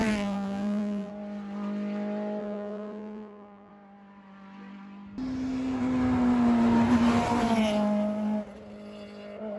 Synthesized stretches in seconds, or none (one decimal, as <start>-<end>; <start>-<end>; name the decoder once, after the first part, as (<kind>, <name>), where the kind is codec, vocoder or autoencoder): 0.0-1.1 (vocoder, BigVGAN v2); 2.4-3.7